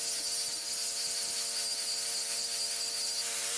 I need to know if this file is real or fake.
fake